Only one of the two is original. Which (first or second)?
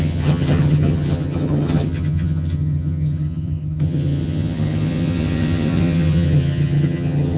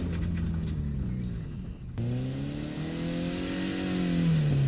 second